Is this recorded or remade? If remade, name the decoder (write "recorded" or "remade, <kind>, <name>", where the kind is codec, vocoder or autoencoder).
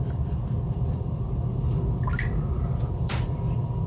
remade, vocoder, BigVGAN v2